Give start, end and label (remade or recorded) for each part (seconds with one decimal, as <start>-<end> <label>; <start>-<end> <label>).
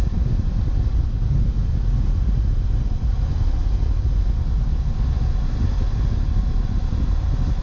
0.0-7.6 recorded